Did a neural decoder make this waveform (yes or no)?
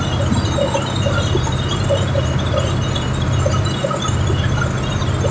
no